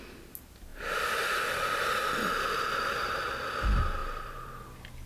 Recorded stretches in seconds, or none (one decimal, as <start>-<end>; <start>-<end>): 0.0-0.7; 3.5-4.0; 4.6-5.1